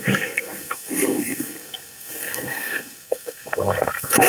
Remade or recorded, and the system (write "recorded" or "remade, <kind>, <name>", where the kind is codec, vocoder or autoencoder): remade, codec, SNAC